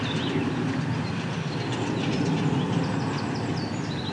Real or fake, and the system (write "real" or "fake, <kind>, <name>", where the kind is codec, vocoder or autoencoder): fake, vocoder, BigVGAN v2